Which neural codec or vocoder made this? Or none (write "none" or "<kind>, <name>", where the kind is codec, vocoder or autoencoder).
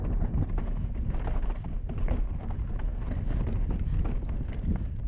none